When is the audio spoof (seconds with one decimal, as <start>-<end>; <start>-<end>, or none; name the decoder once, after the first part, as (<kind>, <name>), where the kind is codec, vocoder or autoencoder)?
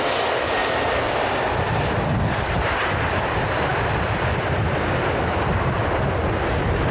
none